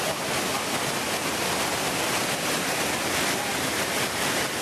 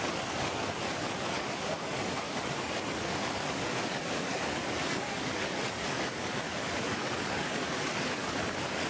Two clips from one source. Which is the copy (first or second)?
second